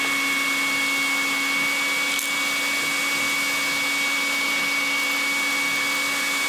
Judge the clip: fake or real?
real